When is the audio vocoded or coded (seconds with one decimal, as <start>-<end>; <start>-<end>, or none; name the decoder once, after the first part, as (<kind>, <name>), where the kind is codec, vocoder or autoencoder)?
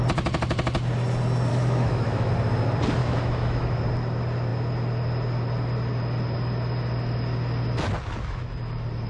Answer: 1.5-2.3 (autoencoder, DAC-VAE); 3.0-3.8